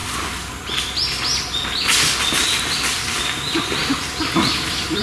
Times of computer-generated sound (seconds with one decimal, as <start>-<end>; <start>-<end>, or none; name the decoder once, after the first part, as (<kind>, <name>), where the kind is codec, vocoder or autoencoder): none